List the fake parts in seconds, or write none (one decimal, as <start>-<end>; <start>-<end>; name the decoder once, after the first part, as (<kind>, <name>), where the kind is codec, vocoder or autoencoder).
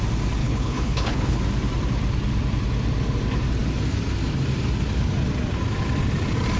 0.4-1.4 (codec, HILCodec)